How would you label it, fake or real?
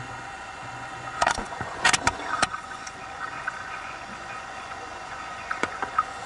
fake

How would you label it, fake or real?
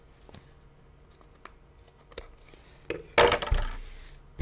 real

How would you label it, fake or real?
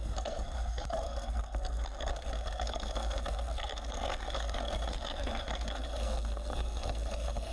fake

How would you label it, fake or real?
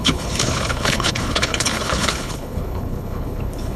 fake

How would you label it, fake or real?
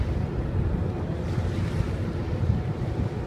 real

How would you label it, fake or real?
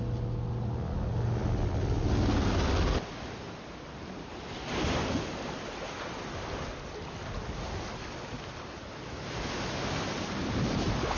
real